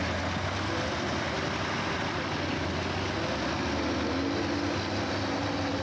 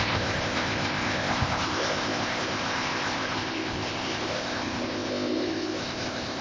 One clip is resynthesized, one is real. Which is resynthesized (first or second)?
second